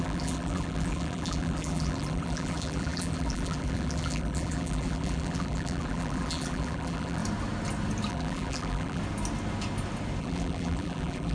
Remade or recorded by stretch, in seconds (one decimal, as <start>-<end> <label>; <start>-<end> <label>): 0.0-7.2 remade; 7.2-8.1 recorded; 8.1-9.0 remade; 9.0-10.2 recorded; 10.2-11.3 remade